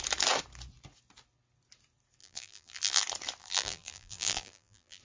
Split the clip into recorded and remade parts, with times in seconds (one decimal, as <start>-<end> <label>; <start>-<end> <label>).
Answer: 0.0-2.2 recorded; 2.2-3.0 remade; 3.0-3.4 recorded; 3.4-5.0 remade